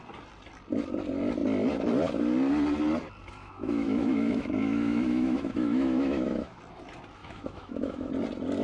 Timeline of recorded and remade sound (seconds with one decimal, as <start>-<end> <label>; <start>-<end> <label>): 0.0-3.4 recorded; 3.4-6.6 remade; 6.6-7.2 recorded; 7.2-8.1 remade; 8.1-8.6 recorded